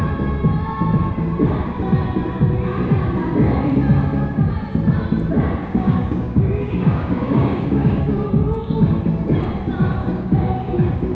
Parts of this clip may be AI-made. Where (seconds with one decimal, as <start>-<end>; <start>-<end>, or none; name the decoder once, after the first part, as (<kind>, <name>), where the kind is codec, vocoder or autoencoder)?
5.6-8.8 (codec, DAC); 10.0-10.7